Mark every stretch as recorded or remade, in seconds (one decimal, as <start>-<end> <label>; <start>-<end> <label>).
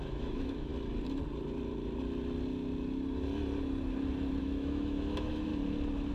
0.0-0.7 remade; 0.7-4.4 recorded; 4.4-5.5 remade; 5.5-6.1 recorded